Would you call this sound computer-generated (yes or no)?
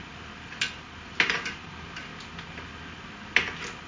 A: no